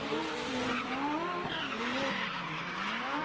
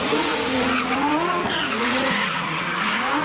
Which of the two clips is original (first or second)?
first